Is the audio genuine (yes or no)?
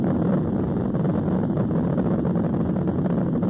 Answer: yes